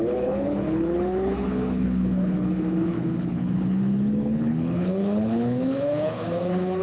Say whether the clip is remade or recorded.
remade